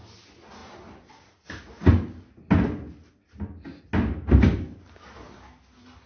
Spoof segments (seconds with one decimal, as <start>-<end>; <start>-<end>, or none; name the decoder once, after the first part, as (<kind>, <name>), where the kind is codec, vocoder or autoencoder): none